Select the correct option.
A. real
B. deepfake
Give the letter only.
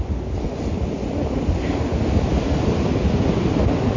A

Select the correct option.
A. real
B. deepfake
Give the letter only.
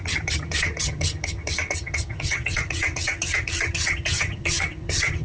B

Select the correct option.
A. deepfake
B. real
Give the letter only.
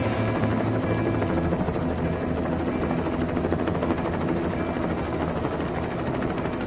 B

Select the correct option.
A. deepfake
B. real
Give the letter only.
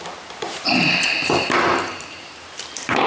A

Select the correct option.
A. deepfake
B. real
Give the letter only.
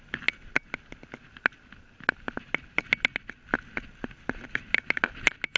B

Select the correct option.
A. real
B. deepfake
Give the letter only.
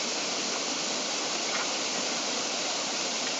A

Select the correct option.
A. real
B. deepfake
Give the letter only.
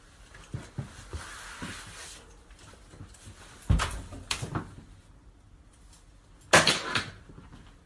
A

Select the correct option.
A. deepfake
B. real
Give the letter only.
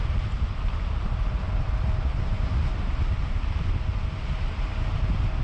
B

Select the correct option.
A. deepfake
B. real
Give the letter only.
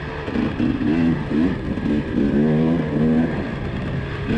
B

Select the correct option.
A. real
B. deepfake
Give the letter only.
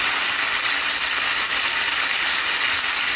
A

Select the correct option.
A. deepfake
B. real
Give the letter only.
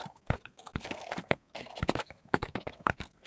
A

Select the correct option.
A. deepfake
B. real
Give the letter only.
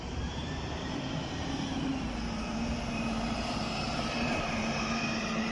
A